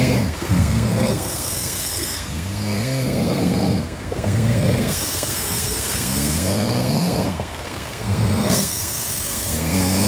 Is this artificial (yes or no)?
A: yes